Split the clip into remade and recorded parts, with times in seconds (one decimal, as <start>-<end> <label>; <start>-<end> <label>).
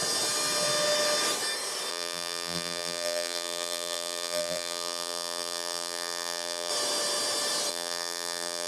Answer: 0.0-1.9 recorded; 1.9-6.7 remade; 6.7-7.7 recorded; 7.7-8.7 remade